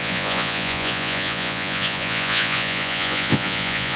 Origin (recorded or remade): remade